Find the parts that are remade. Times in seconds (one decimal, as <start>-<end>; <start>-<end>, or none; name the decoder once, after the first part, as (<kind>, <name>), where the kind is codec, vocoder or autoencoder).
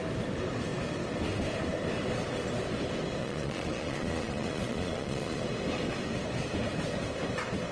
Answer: 3.2-5.4 (vocoder, Vocos)